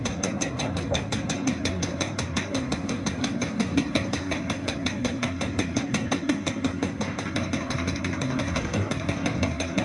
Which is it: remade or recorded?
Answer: remade